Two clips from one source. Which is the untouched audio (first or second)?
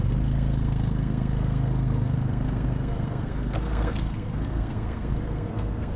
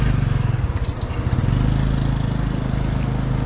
second